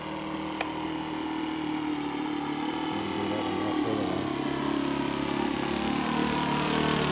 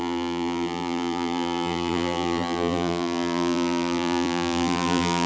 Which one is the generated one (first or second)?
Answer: second